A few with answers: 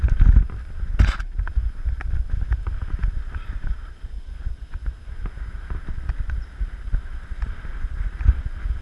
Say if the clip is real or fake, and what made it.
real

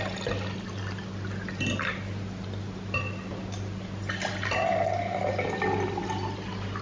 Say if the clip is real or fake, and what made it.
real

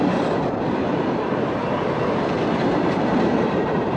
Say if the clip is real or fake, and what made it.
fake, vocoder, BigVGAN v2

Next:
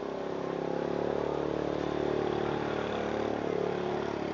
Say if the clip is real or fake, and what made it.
fake, vocoder, BigVGAN v2